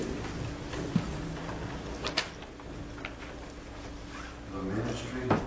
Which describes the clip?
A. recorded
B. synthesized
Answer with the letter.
A